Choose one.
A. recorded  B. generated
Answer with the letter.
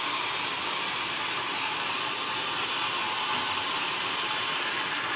A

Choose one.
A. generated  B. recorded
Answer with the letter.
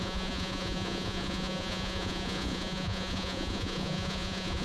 A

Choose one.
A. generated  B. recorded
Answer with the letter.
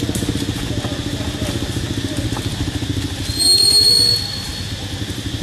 B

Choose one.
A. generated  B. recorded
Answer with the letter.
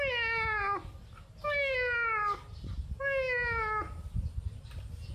B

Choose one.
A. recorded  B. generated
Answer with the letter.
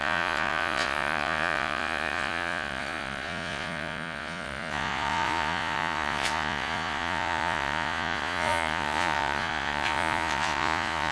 B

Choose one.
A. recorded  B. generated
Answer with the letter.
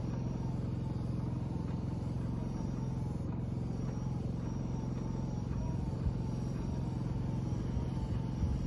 A